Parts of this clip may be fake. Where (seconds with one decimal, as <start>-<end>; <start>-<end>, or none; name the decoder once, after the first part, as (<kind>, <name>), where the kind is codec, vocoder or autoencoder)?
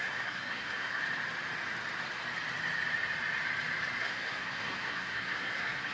0.0-1.0 (codec, SNAC); 4.0-5.9